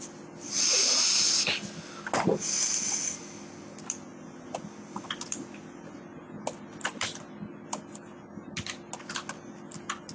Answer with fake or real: real